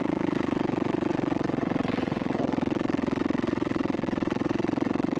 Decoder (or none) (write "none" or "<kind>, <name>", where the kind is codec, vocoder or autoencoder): vocoder, WaveNeXt